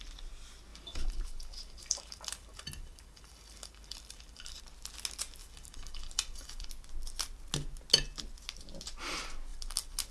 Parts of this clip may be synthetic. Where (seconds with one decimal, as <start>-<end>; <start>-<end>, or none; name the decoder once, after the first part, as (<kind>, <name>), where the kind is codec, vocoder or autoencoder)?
0.7-4.6 (vocoder, BigVGAN v2); 5.4-6.7; 9.5-10.1